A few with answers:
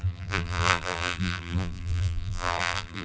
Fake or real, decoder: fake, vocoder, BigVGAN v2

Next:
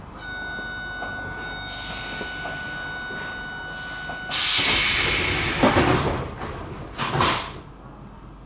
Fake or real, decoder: real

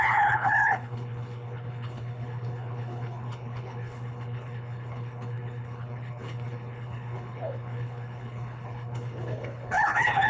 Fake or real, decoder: fake, codec, HILCodec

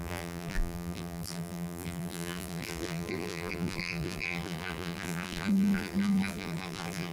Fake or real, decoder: fake, vocoder, BigVGAN v2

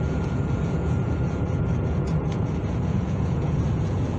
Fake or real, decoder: fake, vocoder, Vocos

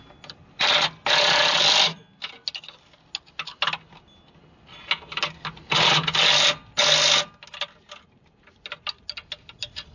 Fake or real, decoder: real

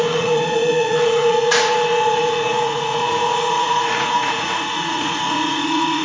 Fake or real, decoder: fake, vocoder, Vocos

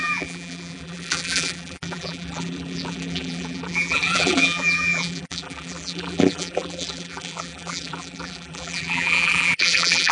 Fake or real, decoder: fake, vocoder, BigVGAN v2